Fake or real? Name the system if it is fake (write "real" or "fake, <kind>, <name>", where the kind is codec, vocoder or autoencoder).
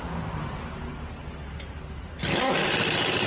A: real